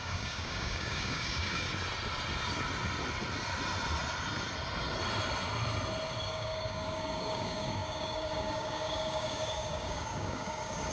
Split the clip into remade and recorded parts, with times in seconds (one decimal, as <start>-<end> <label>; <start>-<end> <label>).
0.0-1.7 remade; 1.7-6.3 recorded; 6.3-10.9 remade